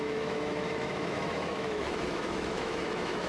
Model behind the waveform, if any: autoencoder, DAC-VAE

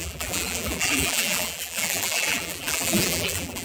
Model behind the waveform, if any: vocoder, BigVGAN v2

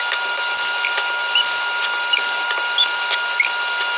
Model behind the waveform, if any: none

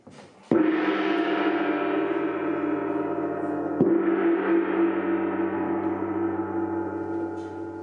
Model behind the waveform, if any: none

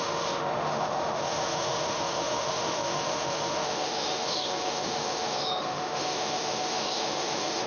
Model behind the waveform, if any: autoencoder, DAC-VAE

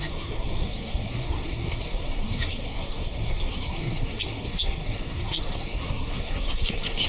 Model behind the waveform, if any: codec, SNAC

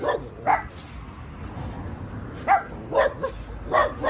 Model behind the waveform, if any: none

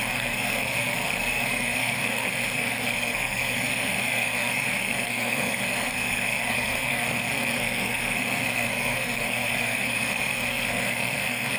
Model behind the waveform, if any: codec, SNAC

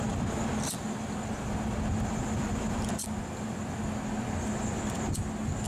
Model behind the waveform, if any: none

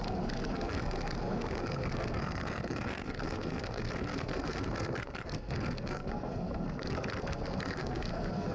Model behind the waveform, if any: codec, SNAC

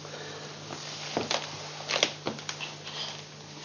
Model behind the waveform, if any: none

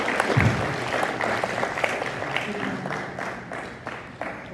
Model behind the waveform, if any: vocoder, BigVGAN v2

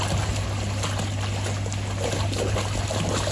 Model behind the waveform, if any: none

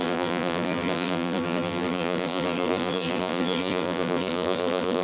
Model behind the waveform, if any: vocoder, BigVGAN v2